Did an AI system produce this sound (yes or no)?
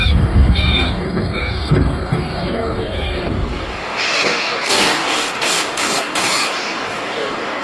yes